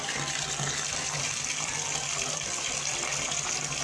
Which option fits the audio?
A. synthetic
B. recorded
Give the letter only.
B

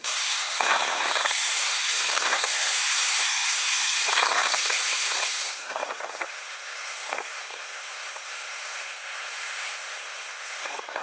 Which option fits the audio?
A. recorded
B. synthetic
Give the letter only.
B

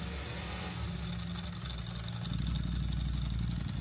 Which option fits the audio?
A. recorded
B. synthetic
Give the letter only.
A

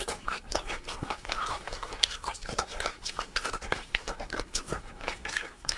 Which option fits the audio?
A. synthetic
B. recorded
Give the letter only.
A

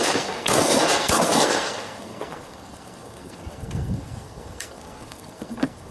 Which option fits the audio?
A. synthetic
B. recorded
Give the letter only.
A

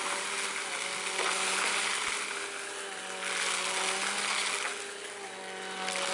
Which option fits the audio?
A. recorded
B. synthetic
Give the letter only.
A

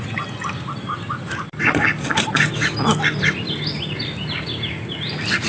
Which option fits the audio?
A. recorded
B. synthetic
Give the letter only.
A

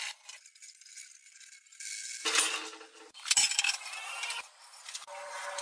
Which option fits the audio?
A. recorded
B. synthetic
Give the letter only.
A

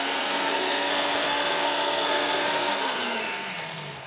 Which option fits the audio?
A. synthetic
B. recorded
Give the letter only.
A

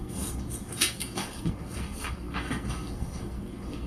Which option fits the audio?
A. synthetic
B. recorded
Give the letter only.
A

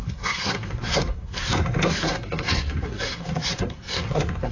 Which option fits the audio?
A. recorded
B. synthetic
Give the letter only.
B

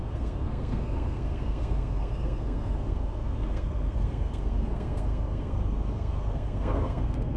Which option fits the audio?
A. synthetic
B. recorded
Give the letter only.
A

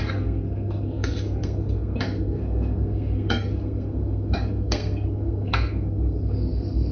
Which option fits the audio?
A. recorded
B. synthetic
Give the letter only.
B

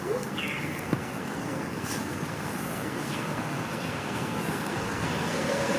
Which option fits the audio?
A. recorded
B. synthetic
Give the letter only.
B